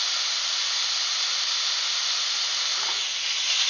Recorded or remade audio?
recorded